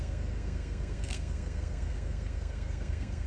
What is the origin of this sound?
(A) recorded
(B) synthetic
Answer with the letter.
B